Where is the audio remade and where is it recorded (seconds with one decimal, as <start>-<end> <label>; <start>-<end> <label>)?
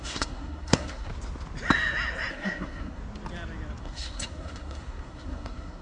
0.0-1.1 remade; 1.1-2.3 recorded; 2.3-3.0 remade; 3.0-3.8 recorded; 3.8-5.8 remade